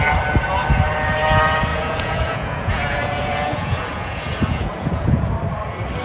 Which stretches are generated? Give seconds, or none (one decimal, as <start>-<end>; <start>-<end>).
1.7-5.3